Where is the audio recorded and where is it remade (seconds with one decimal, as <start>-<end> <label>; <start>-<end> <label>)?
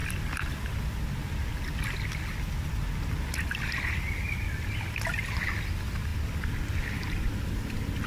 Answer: 0.0-8.1 recorded